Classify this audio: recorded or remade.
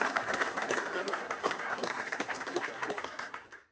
remade